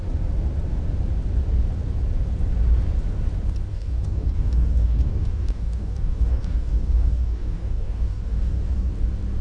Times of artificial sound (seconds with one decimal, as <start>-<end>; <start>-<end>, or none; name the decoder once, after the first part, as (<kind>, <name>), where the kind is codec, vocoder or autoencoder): 3.7-8.9 (codec, DAC)